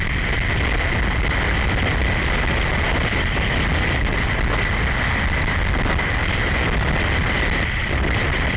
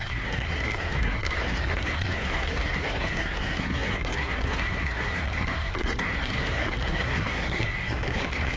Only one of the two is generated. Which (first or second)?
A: second